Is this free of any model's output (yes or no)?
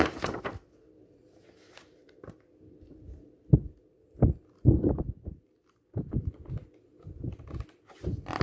yes